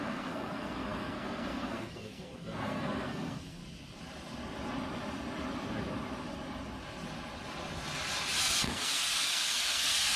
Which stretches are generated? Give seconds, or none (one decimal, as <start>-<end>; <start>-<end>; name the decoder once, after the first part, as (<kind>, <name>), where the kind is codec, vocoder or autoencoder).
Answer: 0.0-3.6 (codec, SNAC); 8.4-10.2

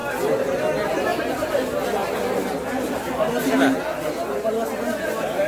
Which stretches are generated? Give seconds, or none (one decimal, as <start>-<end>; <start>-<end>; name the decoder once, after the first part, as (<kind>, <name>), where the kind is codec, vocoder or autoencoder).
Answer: none